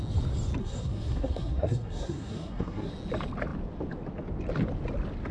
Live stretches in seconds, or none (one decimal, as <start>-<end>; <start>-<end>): 0.0-0.6; 2.9-5.3